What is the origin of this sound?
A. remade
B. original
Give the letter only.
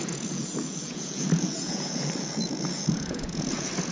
A